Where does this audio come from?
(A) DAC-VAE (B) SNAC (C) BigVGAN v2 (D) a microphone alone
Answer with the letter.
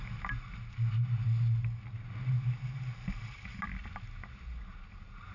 D